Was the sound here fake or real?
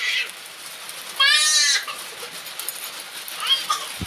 real